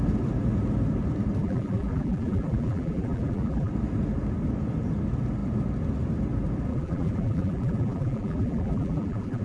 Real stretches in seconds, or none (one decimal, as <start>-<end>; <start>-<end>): 0.0-1.4; 3.7-6.7